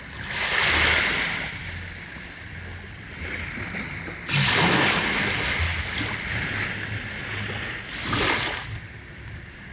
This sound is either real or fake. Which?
real